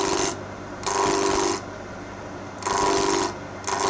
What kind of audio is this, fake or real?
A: real